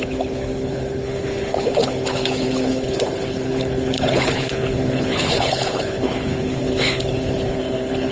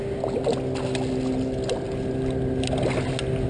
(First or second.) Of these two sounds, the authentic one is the second